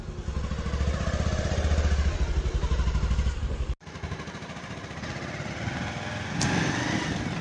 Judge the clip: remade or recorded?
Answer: recorded